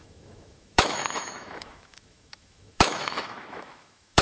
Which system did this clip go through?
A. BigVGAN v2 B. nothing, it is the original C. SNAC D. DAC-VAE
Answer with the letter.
D